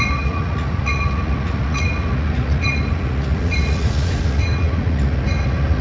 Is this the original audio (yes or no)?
no